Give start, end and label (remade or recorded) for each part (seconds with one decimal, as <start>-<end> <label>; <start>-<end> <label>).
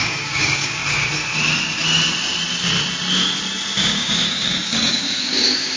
0.0-0.8 remade; 0.8-3.8 recorded; 3.8-5.8 remade